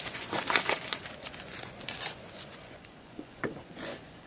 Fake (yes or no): yes